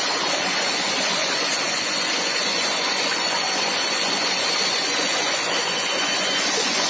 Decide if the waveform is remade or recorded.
remade